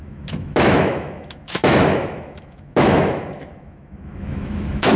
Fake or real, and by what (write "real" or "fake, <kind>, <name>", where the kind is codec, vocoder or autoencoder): fake, autoencoder, DAC-VAE